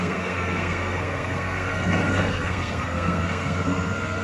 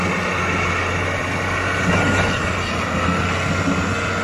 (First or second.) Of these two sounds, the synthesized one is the first